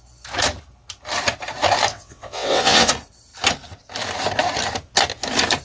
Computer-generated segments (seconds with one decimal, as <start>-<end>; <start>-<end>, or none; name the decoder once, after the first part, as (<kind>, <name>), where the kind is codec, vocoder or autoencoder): 1.9-2.9 (vocoder, WaveNeXt)